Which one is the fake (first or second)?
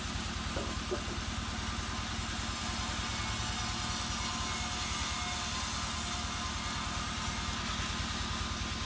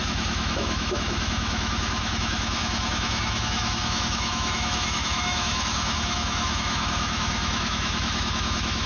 second